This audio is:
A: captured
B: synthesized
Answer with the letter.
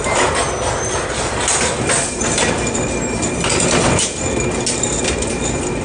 A